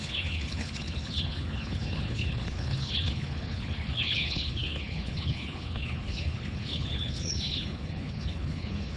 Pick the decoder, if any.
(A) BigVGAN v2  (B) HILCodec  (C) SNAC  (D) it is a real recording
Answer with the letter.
B